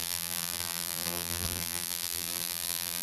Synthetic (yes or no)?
yes